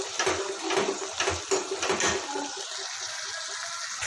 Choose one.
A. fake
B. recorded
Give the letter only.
B